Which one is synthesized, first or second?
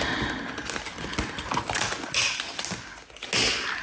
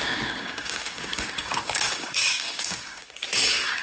second